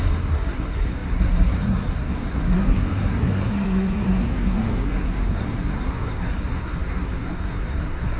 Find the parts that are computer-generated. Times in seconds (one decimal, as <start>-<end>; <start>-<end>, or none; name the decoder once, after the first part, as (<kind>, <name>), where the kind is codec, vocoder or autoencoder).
0.0-8.2 (codec, SNAC)